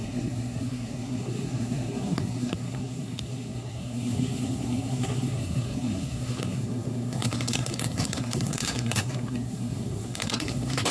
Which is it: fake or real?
fake